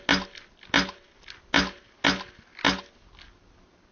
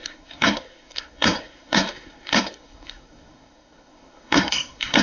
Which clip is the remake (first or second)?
second